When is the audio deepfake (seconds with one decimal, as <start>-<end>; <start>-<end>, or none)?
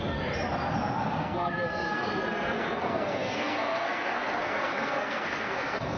1.2-2.1; 2.5-6.0